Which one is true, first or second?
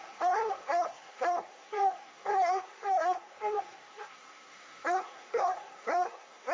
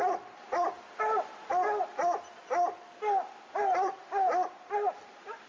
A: second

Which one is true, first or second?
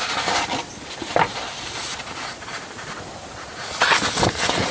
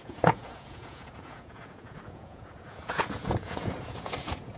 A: first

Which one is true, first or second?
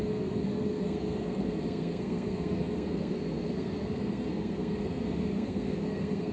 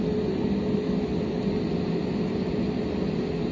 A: second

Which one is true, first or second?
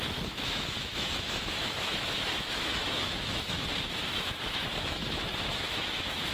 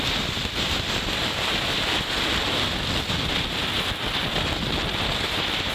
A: second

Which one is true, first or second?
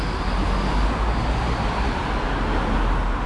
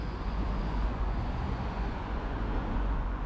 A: first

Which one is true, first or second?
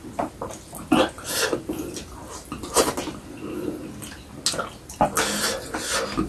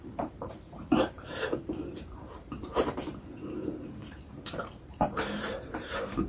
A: first